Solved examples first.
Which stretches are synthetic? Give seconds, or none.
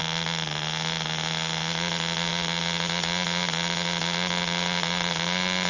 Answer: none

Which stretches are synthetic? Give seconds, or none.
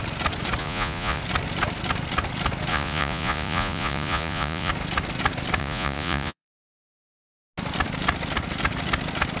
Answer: 0.6-1.2 (vocoder, Vocos); 2.7-4.7; 5.6-6.5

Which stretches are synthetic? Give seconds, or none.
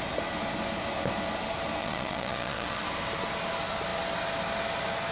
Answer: 1.8-2.8 (vocoder, Vocos)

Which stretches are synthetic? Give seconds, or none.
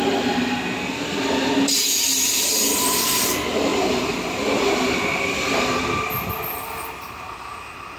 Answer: none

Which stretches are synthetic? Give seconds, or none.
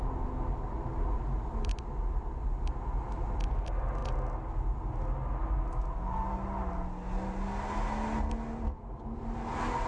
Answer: none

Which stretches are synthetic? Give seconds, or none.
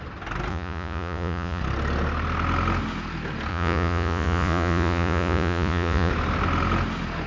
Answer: 0.5-1.6 (vocoder, Vocos); 3.5-6.1